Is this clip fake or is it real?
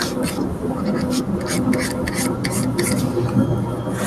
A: real